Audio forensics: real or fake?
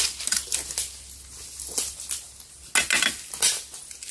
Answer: real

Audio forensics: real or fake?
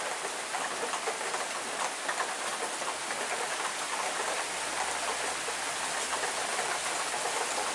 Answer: real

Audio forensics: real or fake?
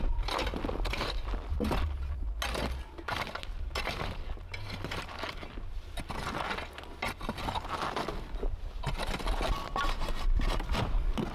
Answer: real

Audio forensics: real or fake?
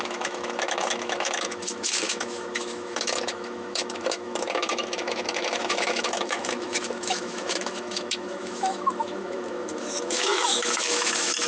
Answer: fake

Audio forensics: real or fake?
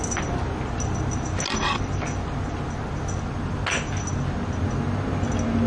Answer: real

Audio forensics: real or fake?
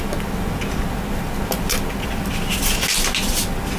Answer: real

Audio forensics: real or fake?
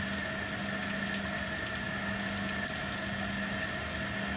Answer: real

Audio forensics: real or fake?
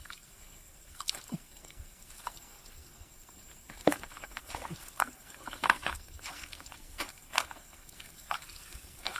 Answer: fake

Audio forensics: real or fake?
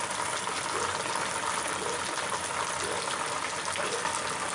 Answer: real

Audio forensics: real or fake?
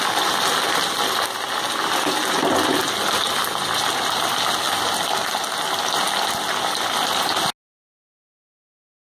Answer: real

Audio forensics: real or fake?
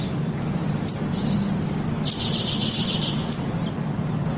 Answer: real